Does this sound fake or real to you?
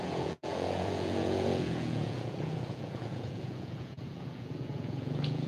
fake